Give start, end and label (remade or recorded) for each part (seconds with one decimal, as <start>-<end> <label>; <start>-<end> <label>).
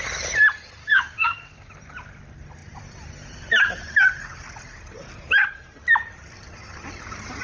0.0-0.8 recorded; 0.8-1.7 remade; 1.7-7.4 recorded